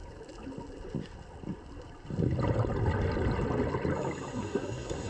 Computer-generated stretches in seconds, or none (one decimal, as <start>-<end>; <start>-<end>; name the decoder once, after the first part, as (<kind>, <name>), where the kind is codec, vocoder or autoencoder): 4.3-5.1 (codec, SNAC)